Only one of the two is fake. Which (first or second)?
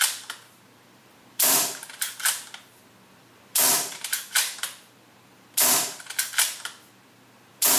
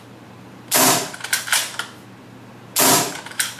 first